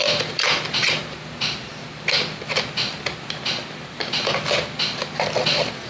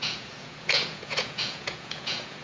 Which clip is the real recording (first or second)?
first